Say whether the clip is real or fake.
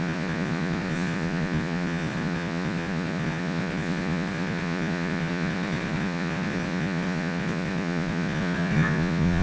fake